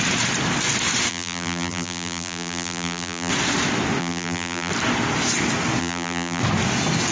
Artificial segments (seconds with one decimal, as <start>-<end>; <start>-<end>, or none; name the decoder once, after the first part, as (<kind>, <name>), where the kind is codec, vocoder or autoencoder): 1.1-3.3 (vocoder, BigVGAN v2); 4.0-4.7; 5.8-6.4